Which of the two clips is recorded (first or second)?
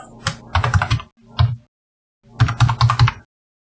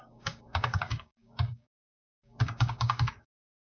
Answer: first